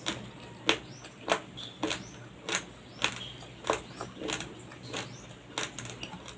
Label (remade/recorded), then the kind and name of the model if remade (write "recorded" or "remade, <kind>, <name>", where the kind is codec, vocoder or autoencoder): recorded